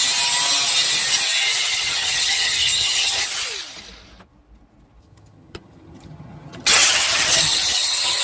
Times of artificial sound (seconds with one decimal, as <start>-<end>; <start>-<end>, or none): 1.7-3.3; 5.0-8.2